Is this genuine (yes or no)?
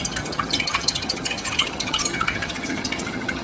no